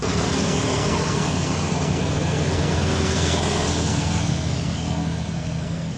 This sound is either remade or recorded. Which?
remade